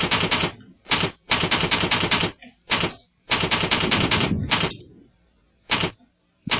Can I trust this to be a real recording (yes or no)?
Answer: no